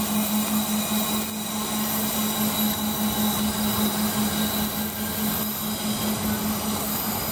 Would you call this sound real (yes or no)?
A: yes